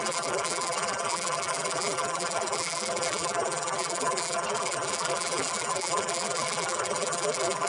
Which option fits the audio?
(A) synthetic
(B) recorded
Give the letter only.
A